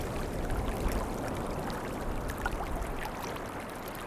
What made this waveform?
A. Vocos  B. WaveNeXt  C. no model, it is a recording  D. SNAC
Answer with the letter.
C